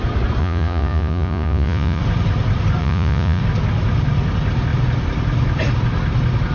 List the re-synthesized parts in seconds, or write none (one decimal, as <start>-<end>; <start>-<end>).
0.4-2.0; 2.8-3.4